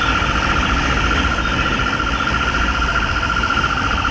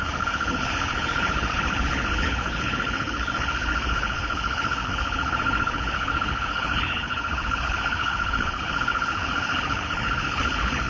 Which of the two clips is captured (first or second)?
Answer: first